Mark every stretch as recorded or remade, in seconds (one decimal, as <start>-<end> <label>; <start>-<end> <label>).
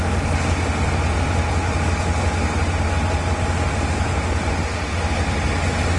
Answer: 0.0-6.0 recorded